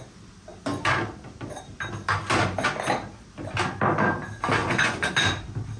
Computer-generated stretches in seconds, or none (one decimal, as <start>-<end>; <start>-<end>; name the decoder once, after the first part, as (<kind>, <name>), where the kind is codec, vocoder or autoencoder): 4.6-5.1 (vocoder, Vocos)